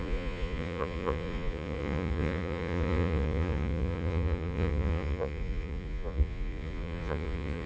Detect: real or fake fake